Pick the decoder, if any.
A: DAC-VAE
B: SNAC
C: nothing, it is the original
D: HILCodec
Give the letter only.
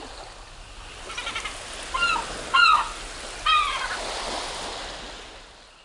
C